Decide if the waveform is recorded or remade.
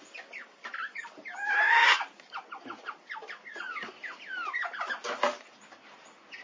recorded